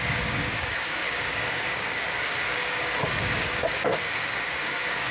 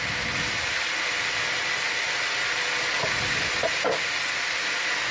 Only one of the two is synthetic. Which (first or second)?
first